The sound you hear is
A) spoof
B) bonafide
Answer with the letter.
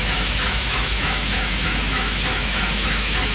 A